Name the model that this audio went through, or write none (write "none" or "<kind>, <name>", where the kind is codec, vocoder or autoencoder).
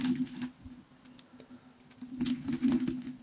none